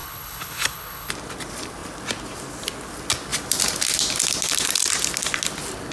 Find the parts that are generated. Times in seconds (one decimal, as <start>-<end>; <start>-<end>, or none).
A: 0.0-1.1

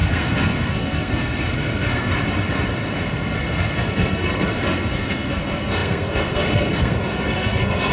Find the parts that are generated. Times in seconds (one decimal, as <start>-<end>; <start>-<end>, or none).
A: 0.0-2.1; 2.9-7.9

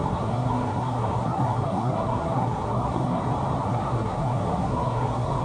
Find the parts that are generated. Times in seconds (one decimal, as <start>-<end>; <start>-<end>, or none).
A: 0.0-3.2; 3.6-5.4

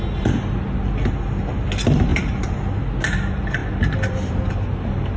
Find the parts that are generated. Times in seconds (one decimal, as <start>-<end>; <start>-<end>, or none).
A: 2.1-2.8; 3.6-4.5

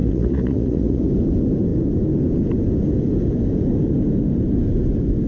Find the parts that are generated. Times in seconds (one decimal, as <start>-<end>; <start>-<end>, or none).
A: 0.0-1.0

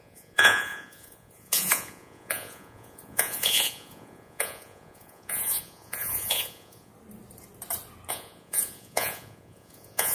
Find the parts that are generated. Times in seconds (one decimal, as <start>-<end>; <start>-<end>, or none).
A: 0.0-6.9; 8.1-10.1

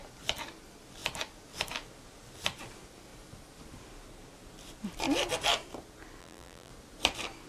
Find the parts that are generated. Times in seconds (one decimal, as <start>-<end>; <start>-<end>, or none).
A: 6.2-6.7

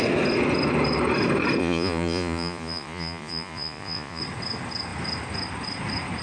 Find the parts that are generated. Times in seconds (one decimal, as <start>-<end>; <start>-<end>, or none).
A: 1.6-4.2